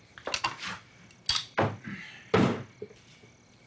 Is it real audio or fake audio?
real